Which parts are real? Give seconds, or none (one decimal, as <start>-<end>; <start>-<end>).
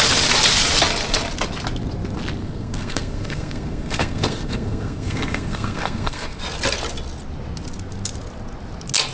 0.0-2.4; 6.4-9.1